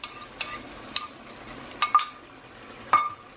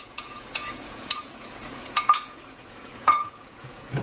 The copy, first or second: second